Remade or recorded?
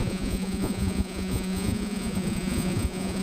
remade